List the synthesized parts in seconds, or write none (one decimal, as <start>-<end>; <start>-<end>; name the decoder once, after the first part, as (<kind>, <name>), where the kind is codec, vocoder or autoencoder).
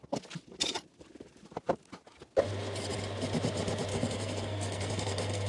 3.9-5.5 (codec, SNAC)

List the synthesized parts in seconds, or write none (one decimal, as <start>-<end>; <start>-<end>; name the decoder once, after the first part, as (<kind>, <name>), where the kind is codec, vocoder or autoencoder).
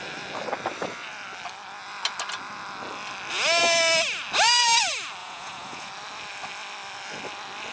5.2-5.9 (vocoder, Vocos)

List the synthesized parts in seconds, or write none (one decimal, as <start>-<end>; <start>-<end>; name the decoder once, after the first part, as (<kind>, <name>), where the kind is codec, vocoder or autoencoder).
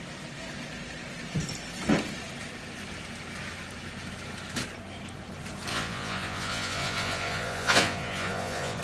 5.7-8.8 (vocoder, Vocos)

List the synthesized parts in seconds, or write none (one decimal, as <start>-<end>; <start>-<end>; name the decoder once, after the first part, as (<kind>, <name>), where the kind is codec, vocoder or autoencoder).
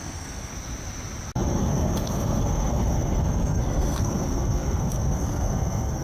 0.0-0.5 (codec, SNAC); 1.6-6.0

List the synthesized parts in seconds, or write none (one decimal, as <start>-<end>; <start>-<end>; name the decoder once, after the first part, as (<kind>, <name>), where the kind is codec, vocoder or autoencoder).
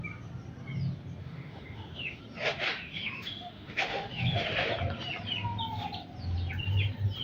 1.2-2.2 (autoencoder, DAC-VAE); 2.7-4.7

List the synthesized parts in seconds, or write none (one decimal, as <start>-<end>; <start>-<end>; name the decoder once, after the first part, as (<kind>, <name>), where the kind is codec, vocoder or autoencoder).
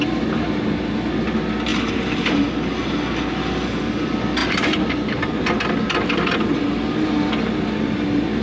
none